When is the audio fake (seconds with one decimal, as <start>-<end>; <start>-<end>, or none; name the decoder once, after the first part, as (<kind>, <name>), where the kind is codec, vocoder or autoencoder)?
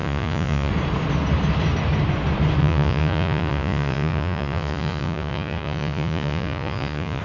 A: 0.0-0.7 (vocoder, Vocos); 2.6-7.2